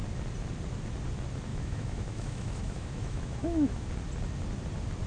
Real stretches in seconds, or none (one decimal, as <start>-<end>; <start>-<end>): 0.0-1.5; 3.9-5.1